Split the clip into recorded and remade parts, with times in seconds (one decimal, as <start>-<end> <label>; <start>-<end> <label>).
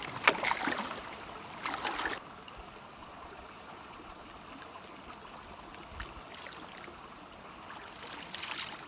0.0-3.0 recorded; 3.0-4.2 remade; 4.2-8.9 recorded